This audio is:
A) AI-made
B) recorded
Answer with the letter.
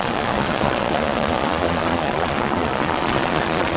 A